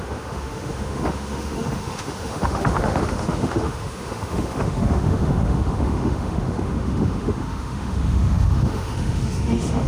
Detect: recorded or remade remade